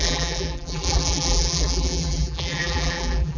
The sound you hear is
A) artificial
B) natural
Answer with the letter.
A